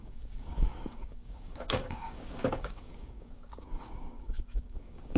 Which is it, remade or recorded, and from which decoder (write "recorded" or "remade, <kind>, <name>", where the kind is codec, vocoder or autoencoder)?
remade, codec, DAC